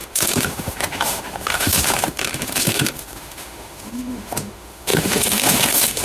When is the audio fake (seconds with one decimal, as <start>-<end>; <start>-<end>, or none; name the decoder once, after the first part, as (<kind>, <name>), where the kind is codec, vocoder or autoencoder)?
0.0-6.0 (autoencoder, DAC-VAE)